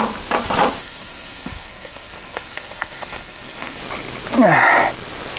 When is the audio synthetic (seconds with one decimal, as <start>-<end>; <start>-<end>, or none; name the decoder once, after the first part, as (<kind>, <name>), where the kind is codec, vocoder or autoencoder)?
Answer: 0.8-3.8 (codec, SNAC)